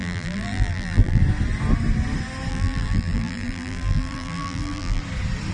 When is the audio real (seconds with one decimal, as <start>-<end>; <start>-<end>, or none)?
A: 1.2-2.5; 5.0-5.5